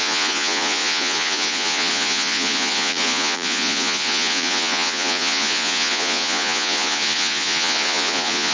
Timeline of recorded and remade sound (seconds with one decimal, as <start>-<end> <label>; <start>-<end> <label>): 0.0-8.5 remade